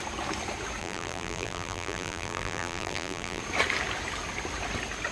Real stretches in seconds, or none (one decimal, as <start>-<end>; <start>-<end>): 0.0-0.8; 3.4-5.1